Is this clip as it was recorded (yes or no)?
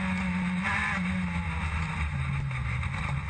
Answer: yes